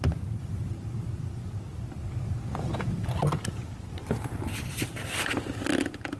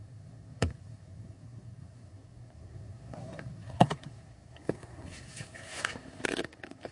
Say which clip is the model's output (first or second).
second